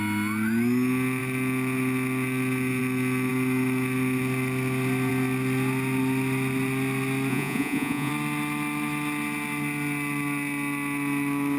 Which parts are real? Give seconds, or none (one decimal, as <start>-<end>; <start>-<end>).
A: 0.0-7.3; 8.1-11.6